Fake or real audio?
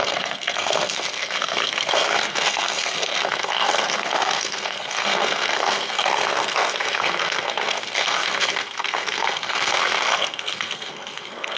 fake